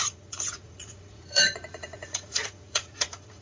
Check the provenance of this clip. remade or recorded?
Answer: remade